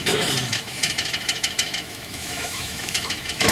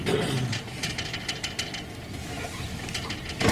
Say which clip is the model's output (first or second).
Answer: first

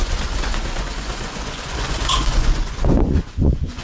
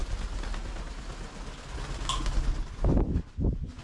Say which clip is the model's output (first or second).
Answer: first